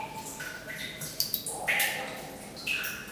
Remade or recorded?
recorded